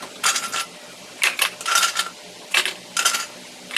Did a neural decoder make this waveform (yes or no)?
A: yes